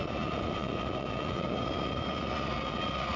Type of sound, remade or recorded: remade